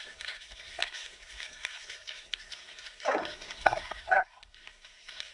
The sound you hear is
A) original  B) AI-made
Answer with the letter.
B